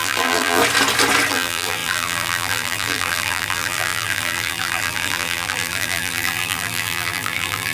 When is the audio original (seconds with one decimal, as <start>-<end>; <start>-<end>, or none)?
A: 0.6-1.3